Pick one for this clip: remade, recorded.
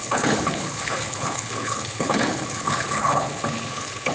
remade